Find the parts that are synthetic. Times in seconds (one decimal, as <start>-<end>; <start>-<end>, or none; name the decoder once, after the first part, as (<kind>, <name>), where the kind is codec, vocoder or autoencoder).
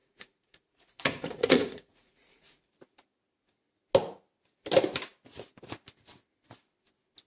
0.0-2.7 (vocoder, Vocos)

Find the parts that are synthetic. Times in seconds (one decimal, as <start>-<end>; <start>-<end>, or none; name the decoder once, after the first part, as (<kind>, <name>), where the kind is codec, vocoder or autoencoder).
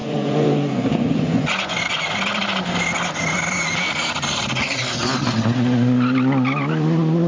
0.0-1.8 (vocoder, Vocos)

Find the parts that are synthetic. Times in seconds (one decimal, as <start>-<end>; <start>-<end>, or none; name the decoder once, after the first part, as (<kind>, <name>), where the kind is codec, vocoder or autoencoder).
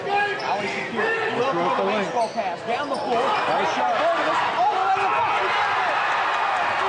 none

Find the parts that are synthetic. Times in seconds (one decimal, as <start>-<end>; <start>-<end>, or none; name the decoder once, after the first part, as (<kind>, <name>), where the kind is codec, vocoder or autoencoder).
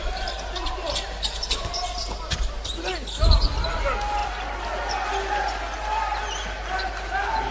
none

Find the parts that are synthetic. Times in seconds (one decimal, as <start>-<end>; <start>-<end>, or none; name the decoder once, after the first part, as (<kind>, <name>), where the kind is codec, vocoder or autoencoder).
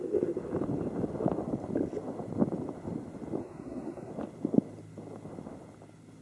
3.4-4.1 (codec, SNAC)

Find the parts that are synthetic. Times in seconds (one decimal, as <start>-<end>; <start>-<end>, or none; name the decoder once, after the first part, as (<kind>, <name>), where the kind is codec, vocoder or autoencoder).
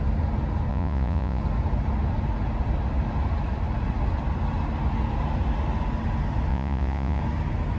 0.7-1.4 (vocoder, Vocos); 6.5-7.2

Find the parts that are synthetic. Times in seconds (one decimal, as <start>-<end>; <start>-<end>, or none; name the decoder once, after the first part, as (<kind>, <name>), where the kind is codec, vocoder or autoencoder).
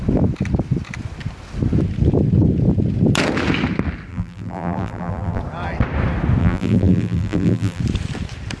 4.1-5.4 (vocoder, BigVGAN v2); 6.4-7.8